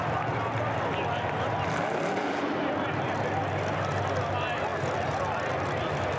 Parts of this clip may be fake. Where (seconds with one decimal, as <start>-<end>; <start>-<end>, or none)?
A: none